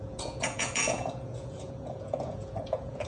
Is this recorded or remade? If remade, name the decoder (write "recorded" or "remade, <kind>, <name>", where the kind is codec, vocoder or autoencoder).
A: remade, vocoder, Vocos